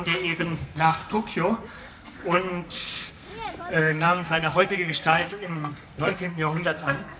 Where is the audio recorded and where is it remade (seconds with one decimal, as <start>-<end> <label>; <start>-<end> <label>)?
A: 0.0-1.3 remade; 1.3-1.8 recorded; 1.8-3.3 remade; 3.3-3.8 recorded; 3.8-7.2 remade